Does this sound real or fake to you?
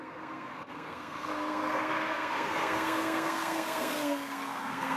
fake